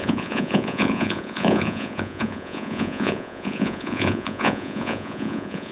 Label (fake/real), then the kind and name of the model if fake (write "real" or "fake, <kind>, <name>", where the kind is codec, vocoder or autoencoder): fake, vocoder, Vocos